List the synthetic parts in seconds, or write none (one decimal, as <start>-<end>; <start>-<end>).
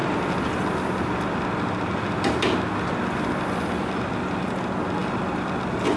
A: none